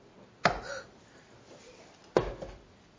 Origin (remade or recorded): recorded